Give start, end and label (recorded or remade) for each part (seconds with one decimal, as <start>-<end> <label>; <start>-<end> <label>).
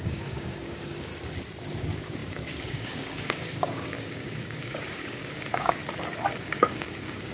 0.0-1.1 remade; 1.1-1.8 recorded; 1.8-5.8 remade; 5.8-6.4 recorded; 6.4-7.3 remade